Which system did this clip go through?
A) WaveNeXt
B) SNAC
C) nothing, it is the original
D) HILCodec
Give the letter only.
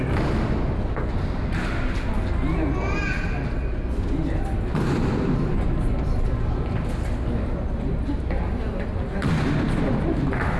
C